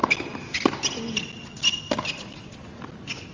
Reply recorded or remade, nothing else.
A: recorded